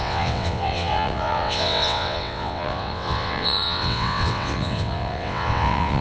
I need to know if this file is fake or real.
fake